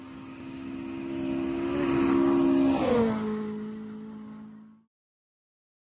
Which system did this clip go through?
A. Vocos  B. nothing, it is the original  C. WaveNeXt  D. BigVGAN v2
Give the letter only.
B